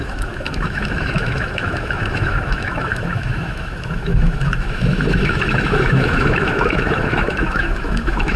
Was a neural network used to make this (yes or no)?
yes